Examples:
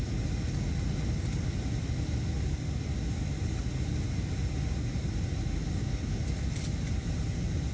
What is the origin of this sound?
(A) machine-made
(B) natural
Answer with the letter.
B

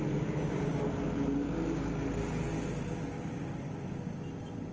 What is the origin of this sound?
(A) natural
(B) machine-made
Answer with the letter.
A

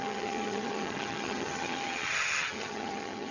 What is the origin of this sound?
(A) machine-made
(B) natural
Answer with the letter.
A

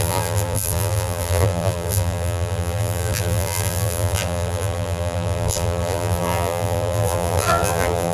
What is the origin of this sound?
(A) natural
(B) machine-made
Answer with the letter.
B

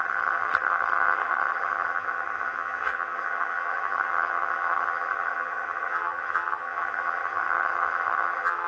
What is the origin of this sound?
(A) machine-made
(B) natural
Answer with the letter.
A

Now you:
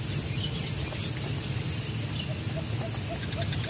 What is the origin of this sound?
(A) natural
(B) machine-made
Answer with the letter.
A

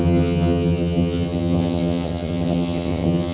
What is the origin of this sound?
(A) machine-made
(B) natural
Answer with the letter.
A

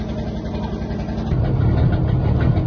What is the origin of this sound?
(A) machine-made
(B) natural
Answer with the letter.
B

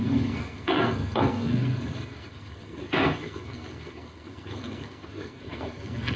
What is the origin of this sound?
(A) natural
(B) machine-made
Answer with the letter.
B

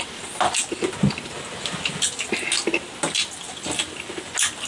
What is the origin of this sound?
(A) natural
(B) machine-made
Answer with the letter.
A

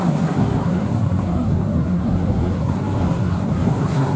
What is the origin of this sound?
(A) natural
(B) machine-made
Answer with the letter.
B